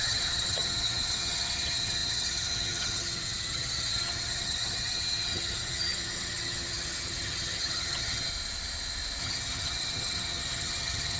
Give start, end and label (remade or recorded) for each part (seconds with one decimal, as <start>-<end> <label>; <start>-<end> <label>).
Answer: 0.0-8.3 remade; 8.3-9.2 recorded; 9.2-11.2 remade